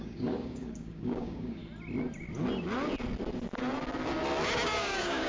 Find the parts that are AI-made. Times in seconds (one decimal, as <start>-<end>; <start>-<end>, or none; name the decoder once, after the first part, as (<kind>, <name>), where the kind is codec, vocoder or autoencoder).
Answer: 0.0-1.6 (codec, DAC); 4.8-5.3